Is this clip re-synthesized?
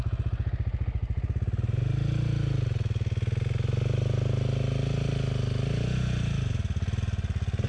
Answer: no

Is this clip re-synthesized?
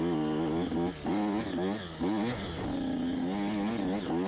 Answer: no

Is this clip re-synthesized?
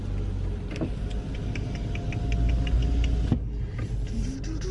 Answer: no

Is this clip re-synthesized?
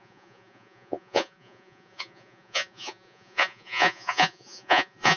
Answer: yes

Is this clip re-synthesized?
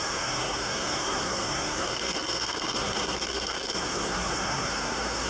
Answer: yes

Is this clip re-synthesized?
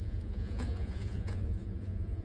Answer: yes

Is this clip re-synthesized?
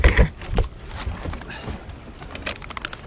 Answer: no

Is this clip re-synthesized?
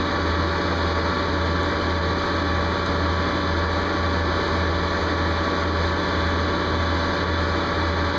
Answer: no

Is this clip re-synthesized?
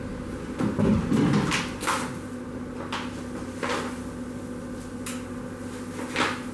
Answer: no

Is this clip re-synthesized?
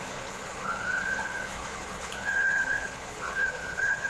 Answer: yes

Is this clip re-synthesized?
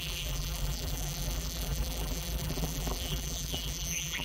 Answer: yes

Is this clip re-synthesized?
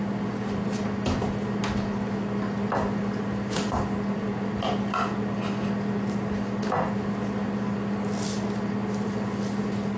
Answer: no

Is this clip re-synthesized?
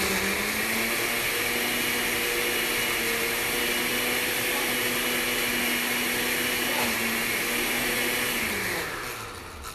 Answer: no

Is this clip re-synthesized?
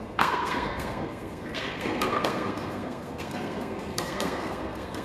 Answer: yes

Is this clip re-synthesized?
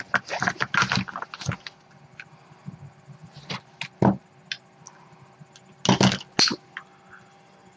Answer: no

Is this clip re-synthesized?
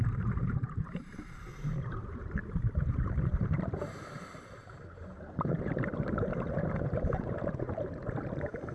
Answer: yes